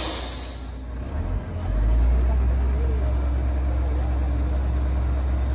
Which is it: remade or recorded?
recorded